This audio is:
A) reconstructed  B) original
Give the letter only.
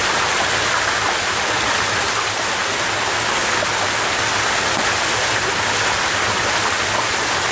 B